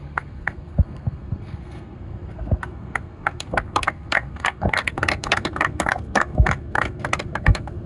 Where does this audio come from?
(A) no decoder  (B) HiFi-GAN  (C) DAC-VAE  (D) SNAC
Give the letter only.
D